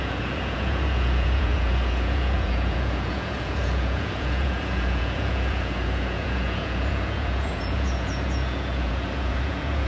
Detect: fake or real fake